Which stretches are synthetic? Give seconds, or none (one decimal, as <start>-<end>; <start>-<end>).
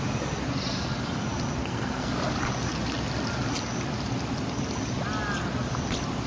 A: 1.6-2.1